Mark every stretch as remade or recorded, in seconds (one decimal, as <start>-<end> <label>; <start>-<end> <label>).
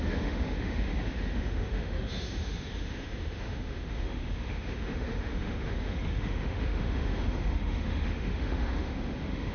0.0-9.5 remade